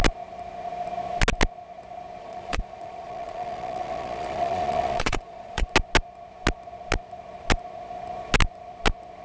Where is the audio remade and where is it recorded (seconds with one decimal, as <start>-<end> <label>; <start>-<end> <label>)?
0.0-2.2 recorded; 2.2-5.7 remade; 5.7-9.2 recorded